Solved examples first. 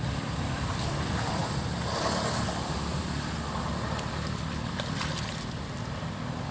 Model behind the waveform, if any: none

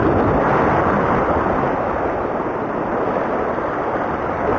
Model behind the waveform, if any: none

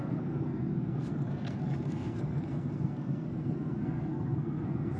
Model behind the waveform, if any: codec, SNAC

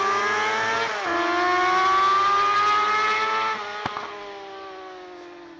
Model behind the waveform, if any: none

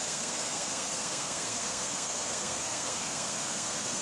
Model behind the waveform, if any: codec, SNAC